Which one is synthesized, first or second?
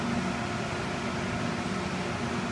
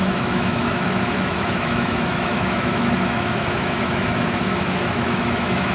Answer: second